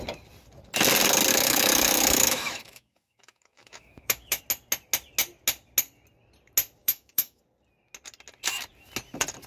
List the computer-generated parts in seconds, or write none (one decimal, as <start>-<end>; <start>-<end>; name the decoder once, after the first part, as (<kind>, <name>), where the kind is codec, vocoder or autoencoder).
1.3-4.4 (autoencoder, DAC-VAE); 6.8-7.4